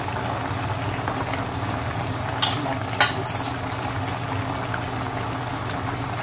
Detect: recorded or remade recorded